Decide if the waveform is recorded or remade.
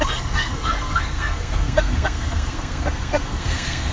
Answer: remade